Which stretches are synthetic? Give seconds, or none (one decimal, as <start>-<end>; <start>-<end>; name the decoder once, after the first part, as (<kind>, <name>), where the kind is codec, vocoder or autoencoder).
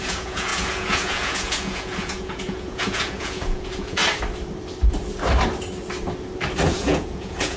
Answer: 0.0-4.0 (vocoder, Vocos); 6.7-7.6